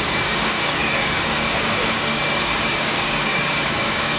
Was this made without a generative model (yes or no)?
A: no